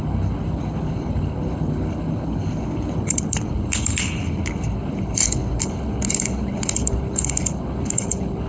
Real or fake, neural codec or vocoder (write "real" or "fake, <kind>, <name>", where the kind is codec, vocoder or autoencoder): fake, codec, HILCodec